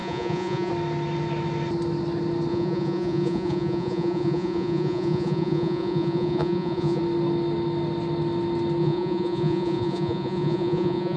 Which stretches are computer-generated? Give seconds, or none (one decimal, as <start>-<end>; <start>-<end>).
0.0-0.7; 2.5-7.0; 8.8-11.2